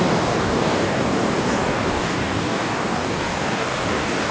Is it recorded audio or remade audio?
remade